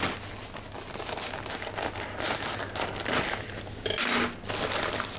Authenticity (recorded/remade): recorded